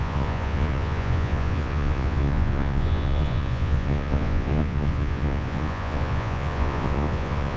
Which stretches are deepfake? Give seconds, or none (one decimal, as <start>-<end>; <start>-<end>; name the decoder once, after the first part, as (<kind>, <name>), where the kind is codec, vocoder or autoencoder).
0.0-7.6 (vocoder, Vocos)